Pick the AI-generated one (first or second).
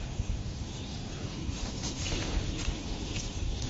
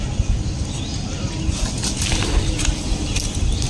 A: first